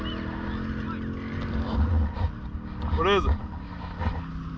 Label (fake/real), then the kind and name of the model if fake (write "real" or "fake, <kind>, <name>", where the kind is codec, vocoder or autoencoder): real